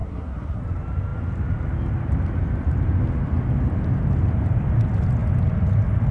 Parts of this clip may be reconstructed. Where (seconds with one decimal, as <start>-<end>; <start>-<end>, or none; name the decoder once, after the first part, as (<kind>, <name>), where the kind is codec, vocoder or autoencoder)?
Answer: 0.0-0.6 (codec, SNAC)